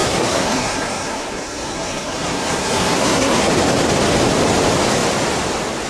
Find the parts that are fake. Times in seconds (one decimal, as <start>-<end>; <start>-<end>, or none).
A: 0.0-3.5